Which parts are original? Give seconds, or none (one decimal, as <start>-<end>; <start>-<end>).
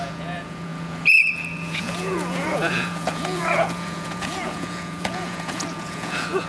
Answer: none